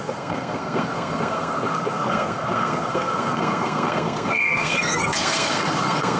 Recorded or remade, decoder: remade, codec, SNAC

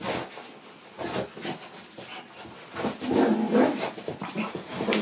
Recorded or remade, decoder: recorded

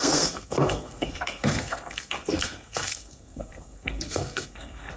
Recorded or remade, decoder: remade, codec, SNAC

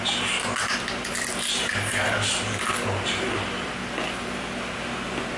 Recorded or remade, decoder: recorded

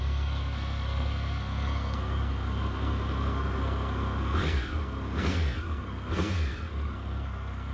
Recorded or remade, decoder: remade, codec, SNAC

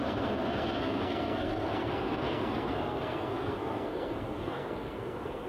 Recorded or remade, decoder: remade, codec, SNAC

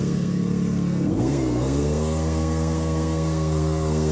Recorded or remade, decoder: remade, codec, SNAC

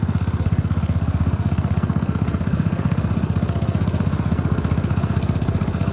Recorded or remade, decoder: remade, codec, SNAC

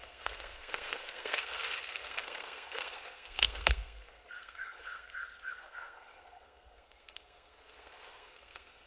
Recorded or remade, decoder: remade, codec, SNAC